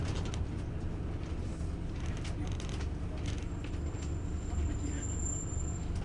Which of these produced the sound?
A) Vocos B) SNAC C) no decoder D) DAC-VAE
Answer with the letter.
C